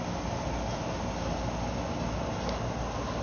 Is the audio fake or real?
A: real